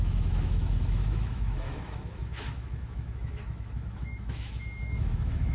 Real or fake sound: fake